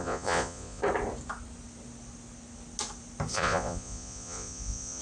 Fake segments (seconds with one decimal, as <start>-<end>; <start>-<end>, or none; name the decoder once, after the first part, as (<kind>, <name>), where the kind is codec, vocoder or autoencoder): 0.0-0.8 (vocoder, Vocos); 3.3-5.0